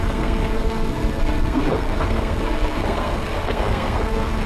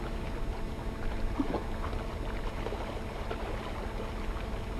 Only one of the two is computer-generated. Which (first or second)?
first